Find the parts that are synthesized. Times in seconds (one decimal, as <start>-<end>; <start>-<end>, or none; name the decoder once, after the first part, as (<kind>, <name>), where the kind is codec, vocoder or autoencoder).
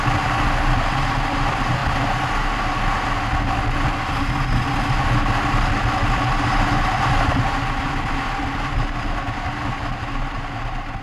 none